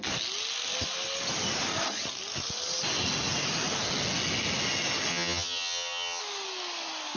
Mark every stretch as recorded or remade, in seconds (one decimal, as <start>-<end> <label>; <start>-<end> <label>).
0.0-5.1 recorded; 5.1-6.2 remade; 6.2-7.2 recorded